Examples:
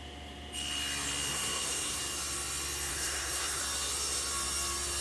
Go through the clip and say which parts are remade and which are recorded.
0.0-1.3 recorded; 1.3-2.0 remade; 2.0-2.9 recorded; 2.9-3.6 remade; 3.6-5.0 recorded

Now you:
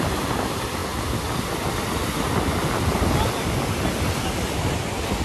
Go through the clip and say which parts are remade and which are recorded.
0.0-5.2 recorded